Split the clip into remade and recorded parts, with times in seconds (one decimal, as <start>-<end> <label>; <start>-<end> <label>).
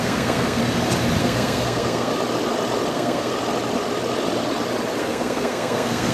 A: 0.0-0.6 remade; 0.6-1.2 recorded; 1.2-2.1 remade; 2.1-2.9 recorded; 2.9-3.3 remade; 3.3-5.0 recorded; 5.0-6.1 remade